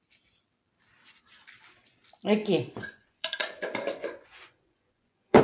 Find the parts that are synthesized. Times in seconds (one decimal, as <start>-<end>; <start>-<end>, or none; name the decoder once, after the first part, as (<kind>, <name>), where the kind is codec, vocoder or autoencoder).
2.4-5.4 (vocoder, Vocos)